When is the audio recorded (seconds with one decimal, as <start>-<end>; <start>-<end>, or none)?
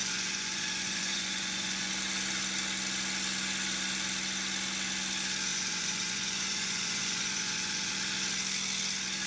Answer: 1.9-5.5; 7.9-9.3